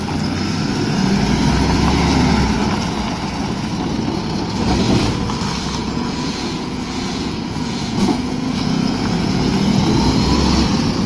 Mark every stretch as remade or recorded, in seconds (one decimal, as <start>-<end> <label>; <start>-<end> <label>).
0.0-5.8 recorded; 5.8-9.5 remade; 9.5-11.1 recorded